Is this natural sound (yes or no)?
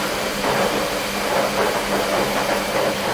yes